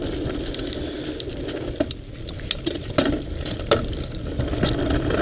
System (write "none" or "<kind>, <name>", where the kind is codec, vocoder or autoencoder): none